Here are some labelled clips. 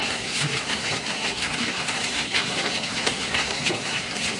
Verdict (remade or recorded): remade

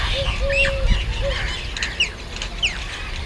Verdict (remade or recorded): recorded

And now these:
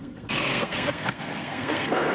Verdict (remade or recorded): remade